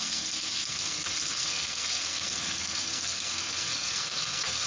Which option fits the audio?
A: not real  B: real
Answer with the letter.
A